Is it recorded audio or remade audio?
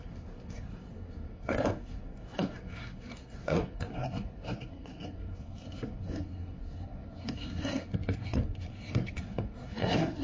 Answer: remade